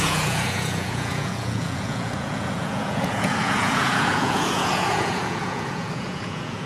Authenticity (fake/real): fake